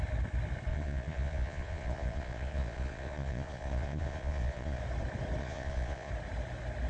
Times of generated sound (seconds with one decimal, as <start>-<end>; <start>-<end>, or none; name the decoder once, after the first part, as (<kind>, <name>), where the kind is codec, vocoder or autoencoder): 0.7-4.8 (vocoder, Vocos); 5.4-6.1